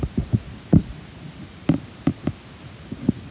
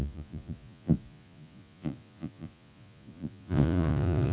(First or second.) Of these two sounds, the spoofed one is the second